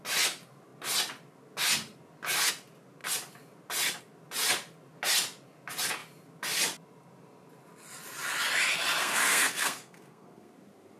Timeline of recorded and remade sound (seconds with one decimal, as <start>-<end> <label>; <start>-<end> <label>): 0.0-9.0 recorded; 9.0-10.5 remade; 10.5-11.0 recorded